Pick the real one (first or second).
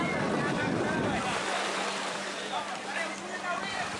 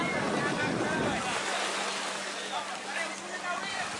second